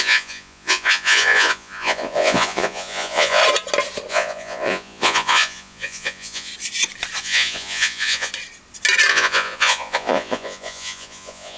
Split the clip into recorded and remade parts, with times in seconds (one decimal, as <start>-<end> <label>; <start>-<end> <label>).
0.0-3.4 remade; 3.4-4.1 recorded; 4.1-6.5 remade; 6.5-7.2 recorded; 7.2-8.3 remade; 8.3-9.1 recorded; 9.1-11.6 remade